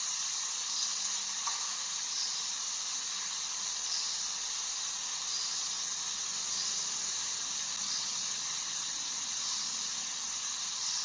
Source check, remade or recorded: recorded